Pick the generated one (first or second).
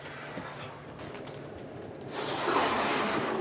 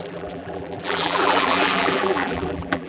second